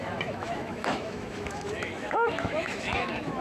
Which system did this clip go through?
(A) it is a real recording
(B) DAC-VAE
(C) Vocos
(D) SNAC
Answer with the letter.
B